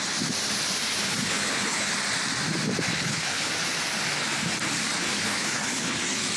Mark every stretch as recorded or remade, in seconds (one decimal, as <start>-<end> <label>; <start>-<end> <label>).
0.0-1.0 recorded; 1.0-1.9 remade; 1.9-2.9 recorded; 2.9-3.5 remade; 3.5-5.0 recorded; 5.0-6.0 remade; 6.0-6.4 recorded